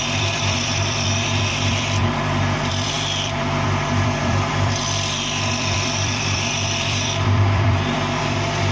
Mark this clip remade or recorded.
remade